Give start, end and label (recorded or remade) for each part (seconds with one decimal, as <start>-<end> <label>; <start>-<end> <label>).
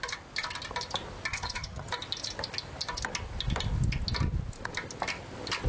0.0-1.3 recorded; 1.3-1.9 remade; 1.9-5.7 recorded